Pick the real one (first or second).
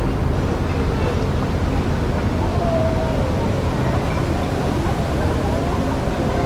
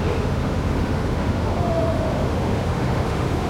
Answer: first